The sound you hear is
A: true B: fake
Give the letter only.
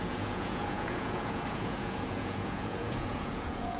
B